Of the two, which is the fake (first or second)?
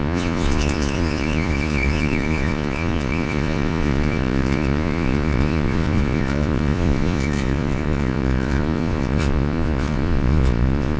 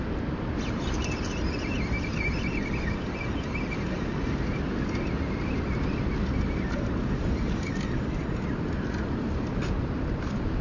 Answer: first